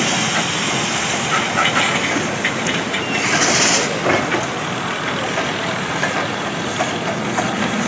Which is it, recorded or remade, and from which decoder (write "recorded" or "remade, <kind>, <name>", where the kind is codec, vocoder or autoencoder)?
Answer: recorded